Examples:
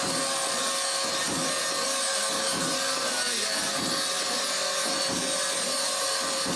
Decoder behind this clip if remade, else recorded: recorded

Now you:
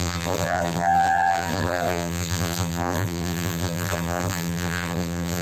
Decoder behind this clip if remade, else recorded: remade, vocoder, BigVGAN v2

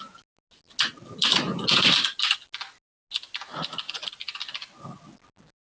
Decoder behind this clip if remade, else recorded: recorded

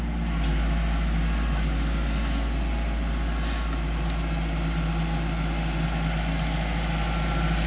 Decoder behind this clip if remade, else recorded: recorded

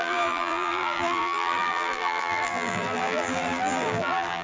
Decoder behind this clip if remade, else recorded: remade, vocoder, BigVGAN v2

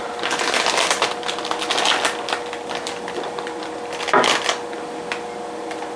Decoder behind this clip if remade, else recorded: recorded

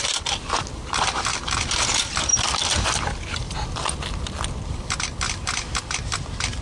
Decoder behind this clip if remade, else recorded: remade, vocoder, BigVGAN v2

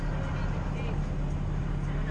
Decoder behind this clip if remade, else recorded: recorded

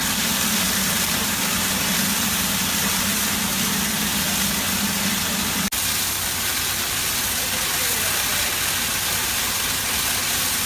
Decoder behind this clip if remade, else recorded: recorded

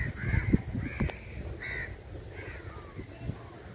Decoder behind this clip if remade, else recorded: recorded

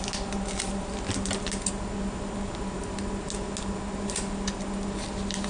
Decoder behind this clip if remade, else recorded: recorded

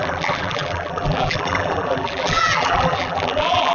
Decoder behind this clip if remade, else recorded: remade, vocoder, BigVGAN v2